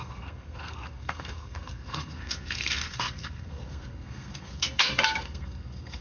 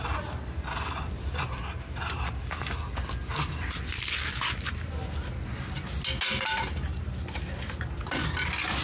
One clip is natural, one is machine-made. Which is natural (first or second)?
second